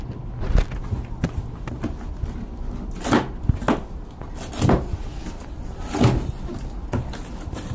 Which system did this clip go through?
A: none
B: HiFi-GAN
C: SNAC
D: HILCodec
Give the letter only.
A